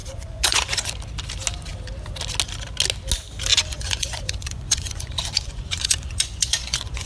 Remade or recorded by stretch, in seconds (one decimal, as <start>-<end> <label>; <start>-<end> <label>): 0.0-0.9 remade; 0.9-3.5 recorded; 3.5-7.1 remade